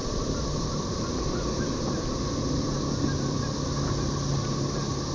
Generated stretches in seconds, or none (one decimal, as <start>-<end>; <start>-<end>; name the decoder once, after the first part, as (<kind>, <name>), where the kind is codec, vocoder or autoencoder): 0.0-1.8 (vocoder, BigVGAN v2)